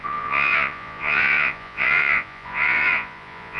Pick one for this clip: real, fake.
fake